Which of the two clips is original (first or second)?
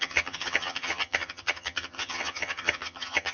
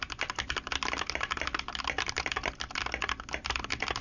second